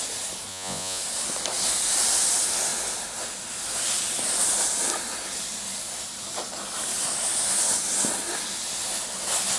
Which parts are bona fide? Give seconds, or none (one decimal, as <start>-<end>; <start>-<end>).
0.0-0.5; 1.0-9.6